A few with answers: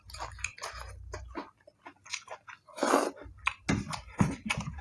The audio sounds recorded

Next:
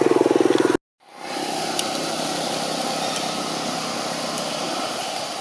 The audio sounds recorded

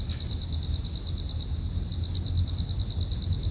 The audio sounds recorded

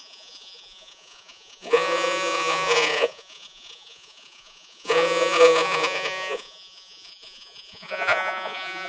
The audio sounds remade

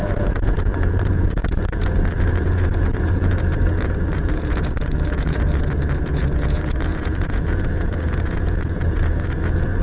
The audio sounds remade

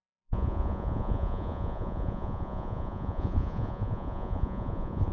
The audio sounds remade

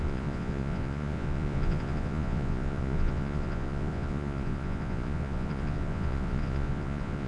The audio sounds remade